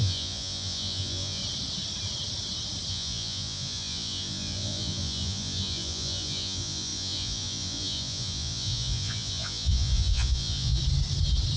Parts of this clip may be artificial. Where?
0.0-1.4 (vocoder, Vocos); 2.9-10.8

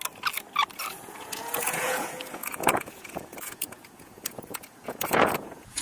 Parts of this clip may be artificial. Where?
0.9-5.8 (vocoder, Vocos)